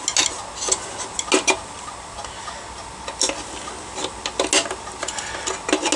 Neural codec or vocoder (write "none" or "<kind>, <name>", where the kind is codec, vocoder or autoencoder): none